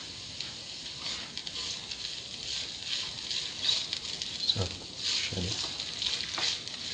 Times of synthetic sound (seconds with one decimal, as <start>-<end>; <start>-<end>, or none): none